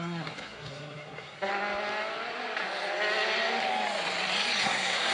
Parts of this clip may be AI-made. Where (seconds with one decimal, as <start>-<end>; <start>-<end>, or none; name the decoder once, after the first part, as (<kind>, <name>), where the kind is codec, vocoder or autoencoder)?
0.0-1.5 (codec, SNAC); 4.6-5.1